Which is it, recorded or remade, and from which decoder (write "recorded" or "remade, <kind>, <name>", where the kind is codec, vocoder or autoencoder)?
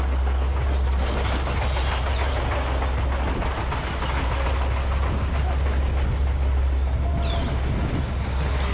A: recorded